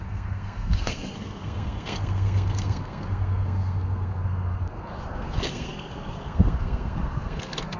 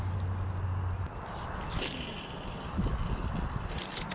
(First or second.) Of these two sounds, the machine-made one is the first